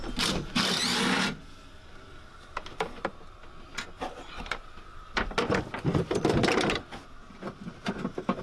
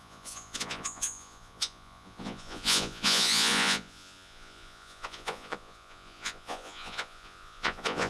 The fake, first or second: second